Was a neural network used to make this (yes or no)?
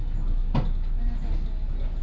no